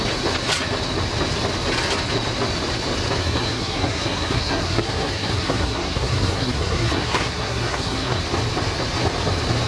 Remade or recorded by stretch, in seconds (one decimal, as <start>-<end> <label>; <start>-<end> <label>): 0.0-3.2 recorded; 3.2-8.2 remade; 8.2-9.7 recorded